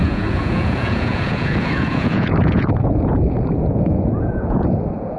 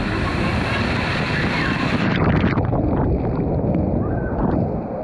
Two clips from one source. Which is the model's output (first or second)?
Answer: first